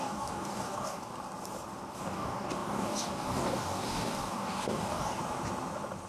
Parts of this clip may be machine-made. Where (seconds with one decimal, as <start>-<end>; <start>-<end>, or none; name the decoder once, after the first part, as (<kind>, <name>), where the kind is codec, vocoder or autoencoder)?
0.0-1.1 (codec, DAC); 1.9-5.2